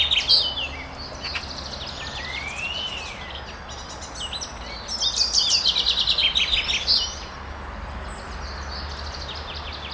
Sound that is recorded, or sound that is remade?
recorded